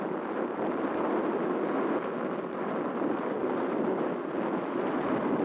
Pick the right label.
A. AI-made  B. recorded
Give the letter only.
B